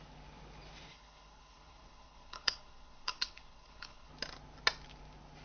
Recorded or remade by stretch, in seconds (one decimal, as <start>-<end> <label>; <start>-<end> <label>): 0.0-0.9 recorded; 0.9-4.1 remade; 4.1-5.4 recorded

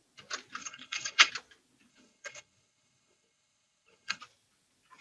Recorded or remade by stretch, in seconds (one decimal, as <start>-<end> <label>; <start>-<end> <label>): 0.0-0.6 recorded; 0.6-1.3 remade; 1.3-1.9 recorded; 1.9-4.2 remade; 4.2-5.0 recorded